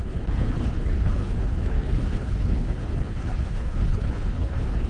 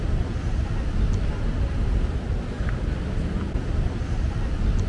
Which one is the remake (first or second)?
first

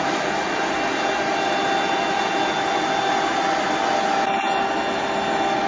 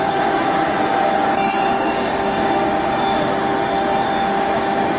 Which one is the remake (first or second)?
second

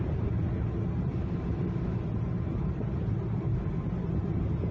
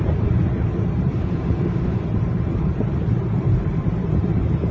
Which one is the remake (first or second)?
second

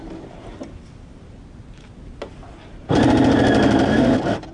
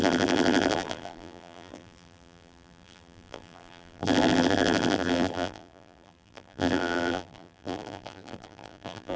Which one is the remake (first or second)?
second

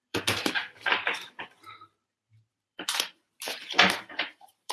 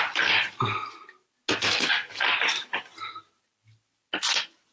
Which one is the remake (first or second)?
first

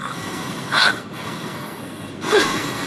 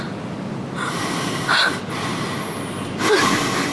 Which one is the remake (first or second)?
first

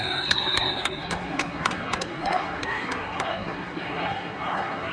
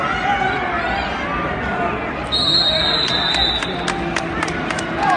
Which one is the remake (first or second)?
first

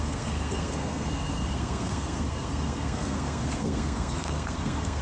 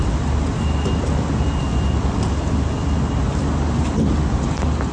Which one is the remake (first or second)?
first